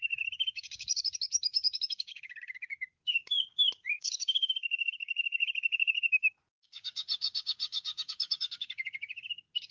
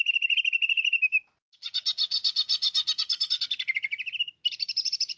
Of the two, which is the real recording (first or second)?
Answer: second